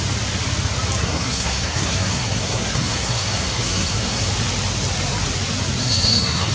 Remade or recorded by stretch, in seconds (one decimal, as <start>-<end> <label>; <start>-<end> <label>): 0.0-1.0 recorded; 1.0-4.3 remade; 4.3-5.8 recorded; 5.8-6.5 remade